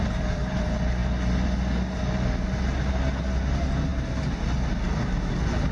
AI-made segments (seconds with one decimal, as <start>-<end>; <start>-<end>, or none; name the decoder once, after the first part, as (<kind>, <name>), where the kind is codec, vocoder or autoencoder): none